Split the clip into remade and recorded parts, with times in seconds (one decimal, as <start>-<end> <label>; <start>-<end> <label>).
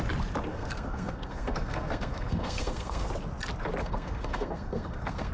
0.0-0.5 recorded; 0.5-3.1 remade; 3.1-3.8 recorded; 3.8-5.3 remade